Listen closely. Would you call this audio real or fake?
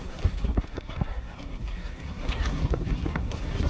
fake